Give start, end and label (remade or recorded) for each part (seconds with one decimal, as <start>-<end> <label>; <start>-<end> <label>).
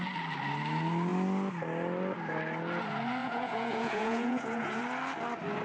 0.0-3.2 recorded; 3.2-4.8 remade; 4.8-5.6 recorded